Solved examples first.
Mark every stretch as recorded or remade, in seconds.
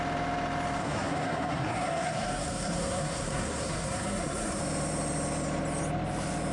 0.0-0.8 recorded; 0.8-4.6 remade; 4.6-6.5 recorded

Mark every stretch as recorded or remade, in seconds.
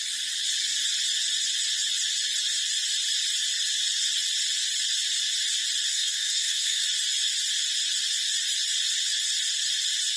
0.0-5.9 recorded; 5.9-6.8 remade; 6.8-10.2 recorded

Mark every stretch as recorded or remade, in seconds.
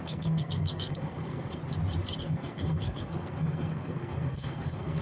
0.0-1.6 remade; 1.6-2.2 recorded; 2.2-5.0 remade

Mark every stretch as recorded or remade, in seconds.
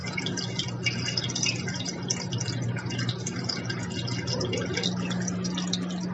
0.0-6.1 recorded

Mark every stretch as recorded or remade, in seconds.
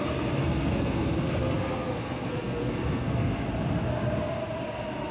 0.0-0.4 recorded; 0.4-3.5 remade; 3.5-5.1 recorded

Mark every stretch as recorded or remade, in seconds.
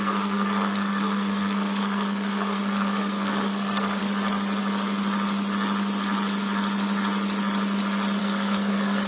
0.0-4.0 remade; 4.0-8.2 recorded; 8.2-9.1 remade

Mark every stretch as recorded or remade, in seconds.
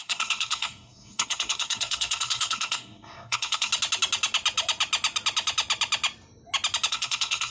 0.0-3.7 remade; 3.7-6.9 recorded; 6.9-7.5 remade